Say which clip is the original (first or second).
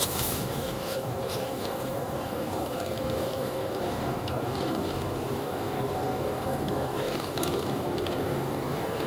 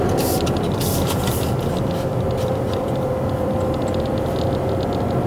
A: second